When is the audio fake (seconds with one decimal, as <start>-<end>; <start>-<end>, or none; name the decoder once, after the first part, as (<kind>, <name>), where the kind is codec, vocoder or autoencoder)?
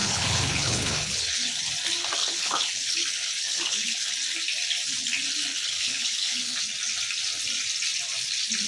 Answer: 0.0-1.5 (codec, HILCodec); 2.2-4.1; 5.5-6.6